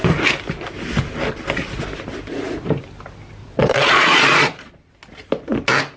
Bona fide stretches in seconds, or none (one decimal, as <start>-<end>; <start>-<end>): 0.0-3.4; 4.9-6.0